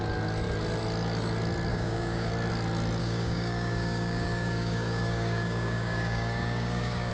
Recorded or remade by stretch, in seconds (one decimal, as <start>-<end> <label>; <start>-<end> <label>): 0.0-1.7 recorded; 1.7-2.3 remade; 2.3-3.0 recorded; 3.0-7.1 remade